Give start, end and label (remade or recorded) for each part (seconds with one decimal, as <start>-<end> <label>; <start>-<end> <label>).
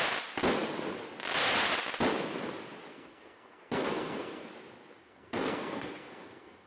0.0-2.9 recorded; 2.9-4.5 remade; 4.5-5.0 recorded; 5.0-6.7 remade